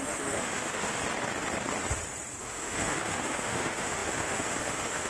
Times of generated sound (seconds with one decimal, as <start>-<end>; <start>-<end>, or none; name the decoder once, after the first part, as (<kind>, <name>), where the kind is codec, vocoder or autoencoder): 0.0-1.0 (autoencoder, DAC-VAE); 2.4-5.1